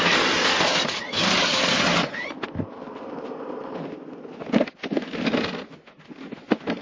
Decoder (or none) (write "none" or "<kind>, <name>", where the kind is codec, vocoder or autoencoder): none